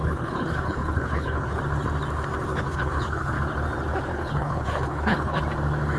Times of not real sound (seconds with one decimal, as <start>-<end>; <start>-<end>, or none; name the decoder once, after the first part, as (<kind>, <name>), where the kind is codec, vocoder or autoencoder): 0.0-1.6 (codec, HILCodec); 2.5-3.4; 4.1-5.4